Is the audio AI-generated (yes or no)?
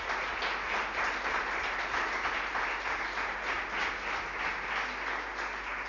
no